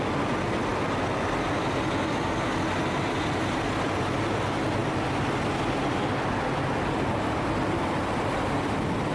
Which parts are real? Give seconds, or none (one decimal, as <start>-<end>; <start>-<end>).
0.0-9.1